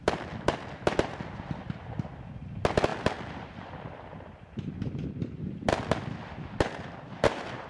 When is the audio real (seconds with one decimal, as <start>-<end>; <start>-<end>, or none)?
0.0-2.9